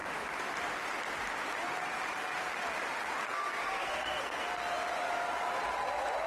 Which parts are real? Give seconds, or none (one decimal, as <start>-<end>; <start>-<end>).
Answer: 0.0-3.2; 4.6-6.3